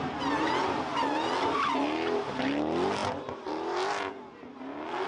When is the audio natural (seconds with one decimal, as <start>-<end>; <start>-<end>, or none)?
0.0-5.1